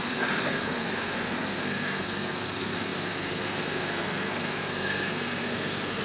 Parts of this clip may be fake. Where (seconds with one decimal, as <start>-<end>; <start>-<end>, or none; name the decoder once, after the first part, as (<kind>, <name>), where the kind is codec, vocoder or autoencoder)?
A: 0.0-6.0 (codec, SNAC)

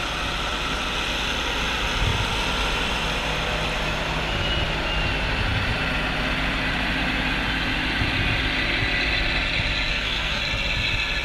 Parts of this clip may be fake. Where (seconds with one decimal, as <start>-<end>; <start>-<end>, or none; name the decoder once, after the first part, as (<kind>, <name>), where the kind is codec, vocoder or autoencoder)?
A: 9.9-10.4 (codec, SNAC)

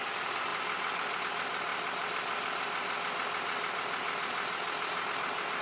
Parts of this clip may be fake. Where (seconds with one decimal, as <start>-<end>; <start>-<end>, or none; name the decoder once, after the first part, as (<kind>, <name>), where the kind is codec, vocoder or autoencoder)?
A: none

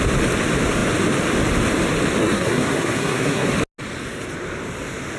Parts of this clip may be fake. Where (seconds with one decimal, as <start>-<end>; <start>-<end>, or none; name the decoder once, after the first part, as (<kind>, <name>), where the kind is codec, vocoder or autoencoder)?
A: 2.2-3.5 (codec, SNAC)

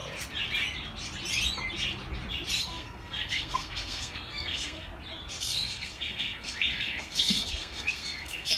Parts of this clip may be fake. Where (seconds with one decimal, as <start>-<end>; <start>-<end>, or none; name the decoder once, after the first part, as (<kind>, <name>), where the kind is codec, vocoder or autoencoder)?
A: 2.6-4.9 (codec, SNAC); 5.4-8.6

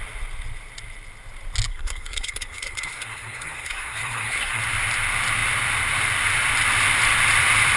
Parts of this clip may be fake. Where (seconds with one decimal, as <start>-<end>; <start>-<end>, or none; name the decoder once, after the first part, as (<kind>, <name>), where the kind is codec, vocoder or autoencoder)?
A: 1.7-4.6 (codec, SNAC)